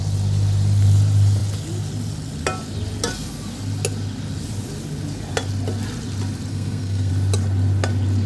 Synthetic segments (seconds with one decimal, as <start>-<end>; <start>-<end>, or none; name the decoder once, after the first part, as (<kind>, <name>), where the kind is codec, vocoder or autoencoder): 6.5-7.1 (codec, SNAC)